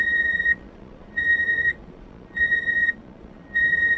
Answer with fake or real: fake